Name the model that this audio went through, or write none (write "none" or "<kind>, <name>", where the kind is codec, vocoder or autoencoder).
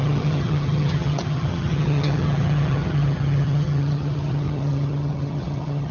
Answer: vocoder, HiFi-GAN